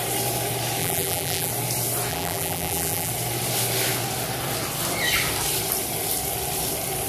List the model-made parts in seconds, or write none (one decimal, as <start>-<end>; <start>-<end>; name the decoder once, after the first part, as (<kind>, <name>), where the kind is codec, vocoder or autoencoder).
0.8-1.5 (vocoder, BigVGAN v2); 2.1-3.1